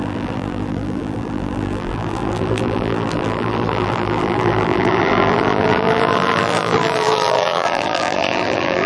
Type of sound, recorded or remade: remade